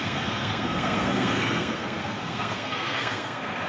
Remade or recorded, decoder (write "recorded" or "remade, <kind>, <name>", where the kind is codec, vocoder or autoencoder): remade, codec, SNAC